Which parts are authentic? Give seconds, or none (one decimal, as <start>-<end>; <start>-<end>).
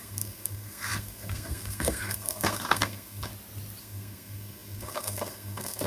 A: 3.3-3.8